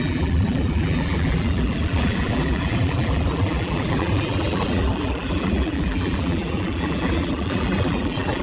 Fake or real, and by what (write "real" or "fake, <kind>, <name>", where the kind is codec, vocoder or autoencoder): fake, vocoder, BigVGAN v2